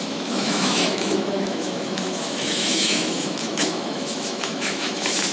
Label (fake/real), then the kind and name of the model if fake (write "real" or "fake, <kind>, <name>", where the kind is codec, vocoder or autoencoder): fake, autoencoder, DAC-VAE